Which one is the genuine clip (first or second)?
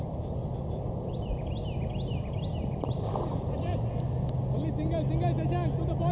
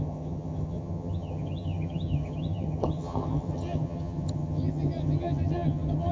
first